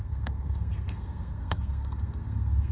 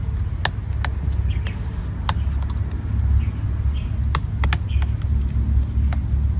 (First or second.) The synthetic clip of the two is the first